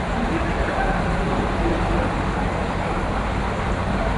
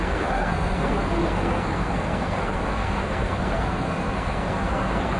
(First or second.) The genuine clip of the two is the first